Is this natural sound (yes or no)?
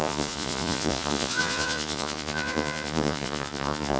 no